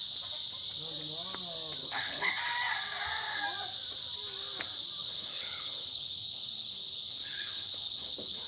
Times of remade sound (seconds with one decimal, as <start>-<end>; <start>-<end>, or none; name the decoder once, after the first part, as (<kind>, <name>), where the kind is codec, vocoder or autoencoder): 1.8-2.3 (codec, HILCodec); 5.0-8.5